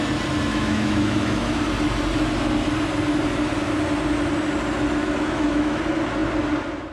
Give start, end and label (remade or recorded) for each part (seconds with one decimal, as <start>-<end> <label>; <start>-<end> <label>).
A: 0.0-0.5 recorded; 0.5-1.6 remade; 1.6-5.0 recorded; 5.0-5.8 remade; 5.8-6.9 recorded